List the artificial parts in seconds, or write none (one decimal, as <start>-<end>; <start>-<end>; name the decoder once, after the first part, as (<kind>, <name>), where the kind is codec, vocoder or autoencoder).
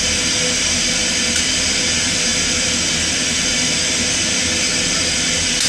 none